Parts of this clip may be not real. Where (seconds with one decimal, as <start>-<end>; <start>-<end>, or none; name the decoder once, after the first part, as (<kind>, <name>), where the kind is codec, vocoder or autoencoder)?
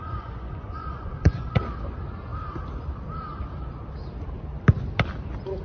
0.0-1.6 (vocoder, Vocos)